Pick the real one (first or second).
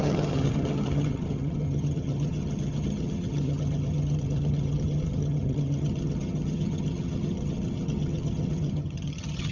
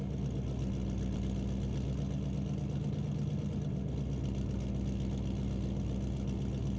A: second